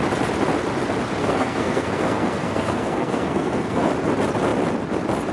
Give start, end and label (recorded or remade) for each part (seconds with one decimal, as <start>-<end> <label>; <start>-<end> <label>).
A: 0.0-1.2 recorded; 1.2-3.9 remade; 3.9-5.3 recorded